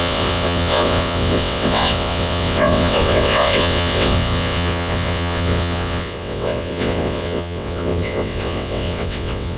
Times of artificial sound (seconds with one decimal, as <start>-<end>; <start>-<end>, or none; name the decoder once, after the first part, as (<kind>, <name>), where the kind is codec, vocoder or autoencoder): 0.0-9.6 (vocoder, WaveNeXt)